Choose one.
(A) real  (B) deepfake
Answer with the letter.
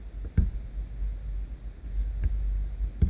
A